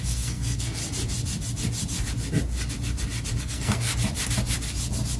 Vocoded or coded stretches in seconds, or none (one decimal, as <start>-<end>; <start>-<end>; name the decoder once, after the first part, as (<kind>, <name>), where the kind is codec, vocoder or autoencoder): 0.0-0.8 (codec, SNAC); 3.4-3.9

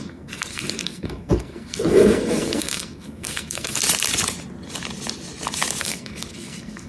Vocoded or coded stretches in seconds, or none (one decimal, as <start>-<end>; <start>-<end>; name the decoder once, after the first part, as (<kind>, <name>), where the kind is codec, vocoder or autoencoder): 0.0-3.8 (codec, SNAC); 5.8-6.9

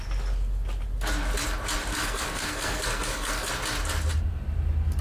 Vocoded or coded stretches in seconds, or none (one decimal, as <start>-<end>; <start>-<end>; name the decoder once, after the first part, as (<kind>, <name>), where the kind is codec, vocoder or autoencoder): 1.9-3.5 (codec, SNAC)

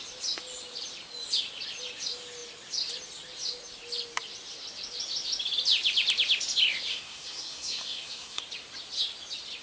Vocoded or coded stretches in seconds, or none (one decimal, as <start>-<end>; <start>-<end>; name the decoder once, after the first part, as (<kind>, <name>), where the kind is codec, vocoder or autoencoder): 6.9-8.4 (codec, SNAC)

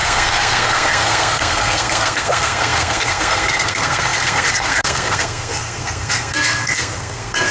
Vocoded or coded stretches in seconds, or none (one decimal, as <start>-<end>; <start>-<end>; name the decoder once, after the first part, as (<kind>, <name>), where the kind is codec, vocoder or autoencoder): 0.0-7.5 (codec, SNAC)